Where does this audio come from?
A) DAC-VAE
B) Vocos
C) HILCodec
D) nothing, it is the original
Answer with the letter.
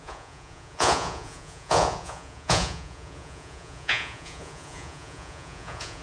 B